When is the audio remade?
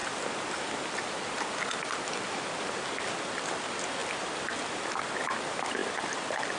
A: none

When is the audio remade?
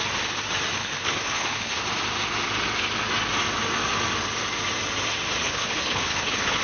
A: 0.8-1.8 (codec, HILCodec); 5.4-6.6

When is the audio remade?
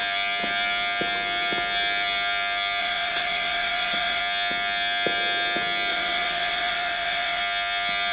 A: 2.8-4.2 (vocoder, WaveNeXt); 5.9-7.4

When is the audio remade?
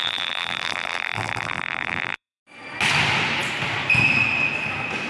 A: 0.0-2.4 (vocoder, BigVGAN v2)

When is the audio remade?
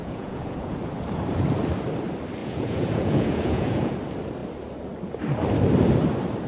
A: 0.0-0.8 (vocoder, Vocos); 2.4-3.9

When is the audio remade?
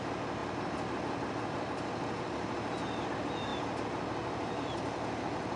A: none